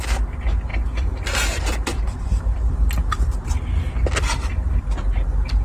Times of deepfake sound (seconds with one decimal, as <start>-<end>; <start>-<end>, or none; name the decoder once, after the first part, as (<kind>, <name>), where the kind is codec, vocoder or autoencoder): 0.7-3.5 (vocoder, BigVGAN v2)

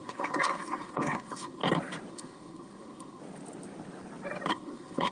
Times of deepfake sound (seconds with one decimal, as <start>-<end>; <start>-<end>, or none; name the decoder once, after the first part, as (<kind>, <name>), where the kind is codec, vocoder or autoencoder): 0.0-1.6 (codec, SNAC); 2.1-3.2; 4.5-5.1

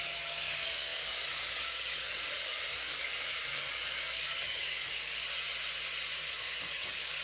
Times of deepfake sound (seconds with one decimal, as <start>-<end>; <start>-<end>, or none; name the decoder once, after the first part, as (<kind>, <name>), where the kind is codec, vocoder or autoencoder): 0.0-5.2 (codec, DAC); 6.3-7.2

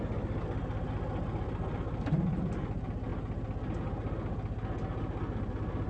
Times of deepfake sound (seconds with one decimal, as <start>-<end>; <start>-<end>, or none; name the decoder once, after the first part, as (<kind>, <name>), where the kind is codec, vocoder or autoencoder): none

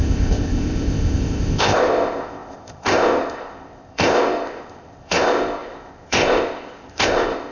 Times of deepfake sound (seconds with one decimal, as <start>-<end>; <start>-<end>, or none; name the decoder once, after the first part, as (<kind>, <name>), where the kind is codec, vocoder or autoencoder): 0.0-7.5 (codec, ZipCodec)

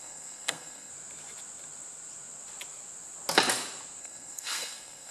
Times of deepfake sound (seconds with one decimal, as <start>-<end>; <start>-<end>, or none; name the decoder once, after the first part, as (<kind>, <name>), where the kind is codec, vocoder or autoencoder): 0.0-0.9 (codec, SNAC); 4.0-5.1

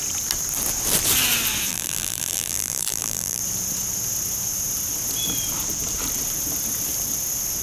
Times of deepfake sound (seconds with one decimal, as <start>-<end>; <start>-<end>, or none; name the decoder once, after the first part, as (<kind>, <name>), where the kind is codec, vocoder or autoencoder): 1.7-3.4 (vocoder, BigVGAN v2)